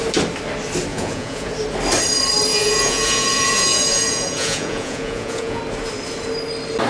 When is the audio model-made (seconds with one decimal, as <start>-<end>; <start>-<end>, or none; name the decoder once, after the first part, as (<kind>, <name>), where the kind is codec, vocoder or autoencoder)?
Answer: 0.9-1.5 (vocoder, Vocos); 2.5-5.6